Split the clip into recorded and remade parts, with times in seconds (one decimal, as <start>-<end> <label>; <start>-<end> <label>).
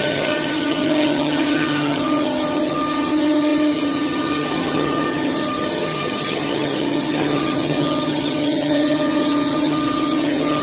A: 0.0-10.6 remade